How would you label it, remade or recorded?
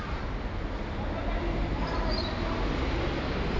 recorded